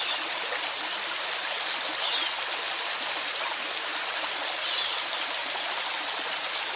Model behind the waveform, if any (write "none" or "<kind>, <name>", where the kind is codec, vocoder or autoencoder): none